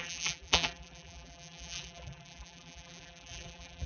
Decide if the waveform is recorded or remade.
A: remade